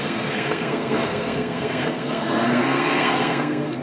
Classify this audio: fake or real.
fake